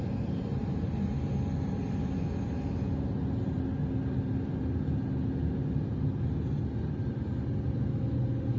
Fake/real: real